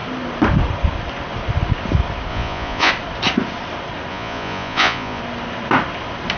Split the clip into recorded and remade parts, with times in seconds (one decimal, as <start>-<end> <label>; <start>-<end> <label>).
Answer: 0.0-2.3 recorded; 2.3-2.9 remade; 2.9-4.1 recorded; 4.1-5.2 remade; 5.2-6.4 recorded